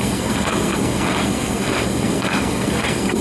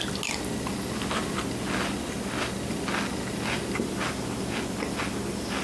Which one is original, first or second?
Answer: second